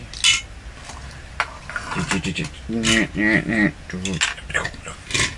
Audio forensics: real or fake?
real